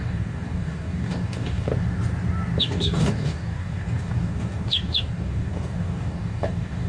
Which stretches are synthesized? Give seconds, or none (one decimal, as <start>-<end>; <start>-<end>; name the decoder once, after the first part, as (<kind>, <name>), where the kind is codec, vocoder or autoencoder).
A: 0.0-1.7 (codec, DAC); 2.6-6.9